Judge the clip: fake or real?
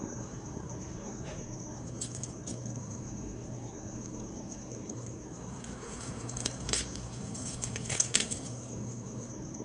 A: fake